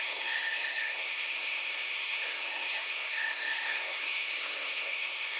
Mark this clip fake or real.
fake